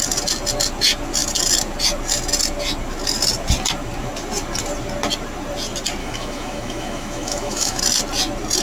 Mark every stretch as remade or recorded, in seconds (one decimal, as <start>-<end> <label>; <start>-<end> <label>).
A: 0.0-6.0 recorded; 6.0-7.8 remade; 7.8-8.6 recorded